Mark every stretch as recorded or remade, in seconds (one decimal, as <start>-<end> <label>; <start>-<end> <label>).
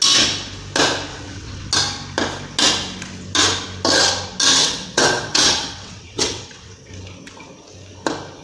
0.0-1.1 recorded; 1.1-1.7 remade; 1.7-4.6 recorded; 4.6-6.9 remade; 6.9-8.4 recorded